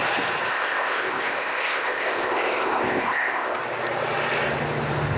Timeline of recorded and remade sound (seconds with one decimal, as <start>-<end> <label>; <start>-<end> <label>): 0.0-0.5 recorded; 0.5-3.6 remade; 3.6-5.2 recorded